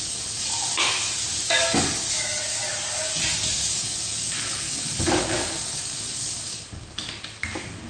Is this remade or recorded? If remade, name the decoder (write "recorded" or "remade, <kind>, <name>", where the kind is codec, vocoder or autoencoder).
remade, codec, DAC